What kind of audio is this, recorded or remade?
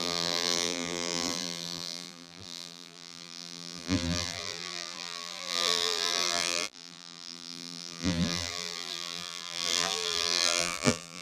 remade